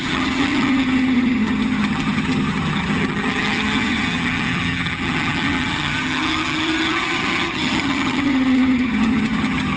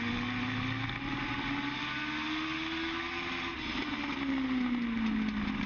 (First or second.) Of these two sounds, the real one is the second